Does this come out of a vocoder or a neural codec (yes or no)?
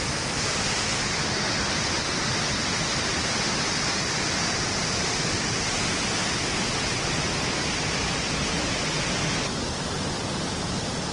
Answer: no